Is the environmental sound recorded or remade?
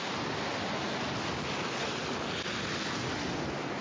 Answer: recorded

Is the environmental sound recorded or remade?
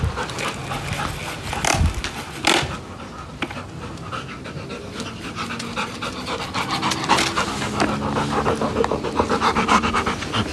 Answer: recorded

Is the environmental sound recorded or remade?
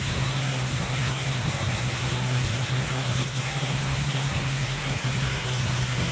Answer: remade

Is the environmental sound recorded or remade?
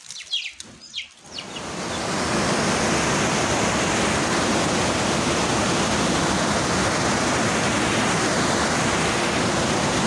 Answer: recorded